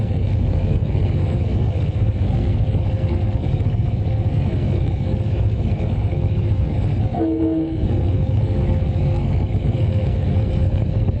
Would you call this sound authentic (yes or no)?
no